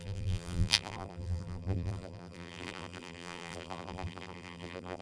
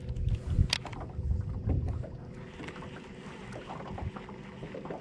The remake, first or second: first